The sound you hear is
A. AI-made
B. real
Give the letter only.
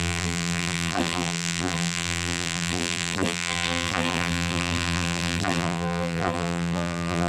A